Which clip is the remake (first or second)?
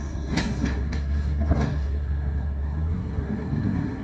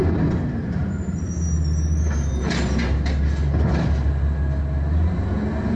first